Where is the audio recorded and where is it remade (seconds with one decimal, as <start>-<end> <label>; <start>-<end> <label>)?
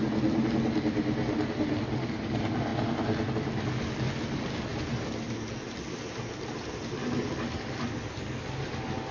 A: 0.0-9.1 recorded